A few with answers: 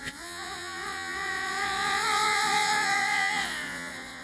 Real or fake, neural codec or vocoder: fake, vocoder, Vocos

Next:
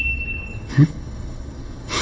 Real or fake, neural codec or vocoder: fake, codec, HILCodec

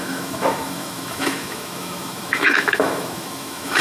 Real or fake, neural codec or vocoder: fake, autoencoder, DAC-VAE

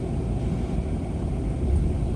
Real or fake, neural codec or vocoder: real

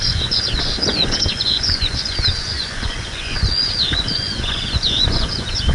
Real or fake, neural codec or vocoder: fake, vocoder, Vocos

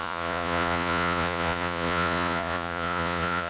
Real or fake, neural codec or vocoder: fake, vocoder, Vocos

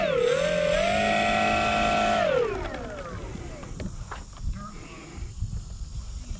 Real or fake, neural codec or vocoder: real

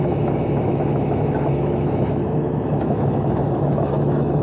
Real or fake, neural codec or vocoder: fake, autoencoder, DAC-VAE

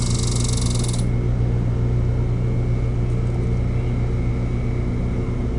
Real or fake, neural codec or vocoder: real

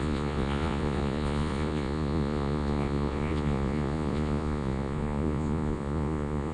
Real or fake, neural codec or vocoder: fake, vocoder, Vocos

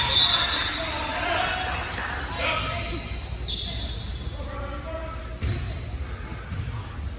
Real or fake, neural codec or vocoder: real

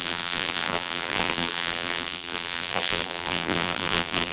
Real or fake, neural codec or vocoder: fake, vocoder, BigVGAN v2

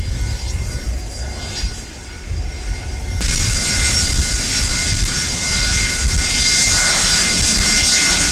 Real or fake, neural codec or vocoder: real